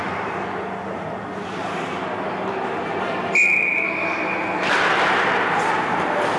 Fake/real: real